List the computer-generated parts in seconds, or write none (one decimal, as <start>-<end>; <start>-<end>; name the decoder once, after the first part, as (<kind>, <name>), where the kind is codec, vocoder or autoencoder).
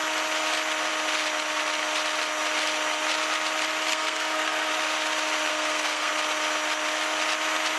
3.9-4.7 (codec, SNAC); 5.5-6.1